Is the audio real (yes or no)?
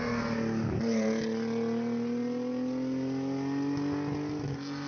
yes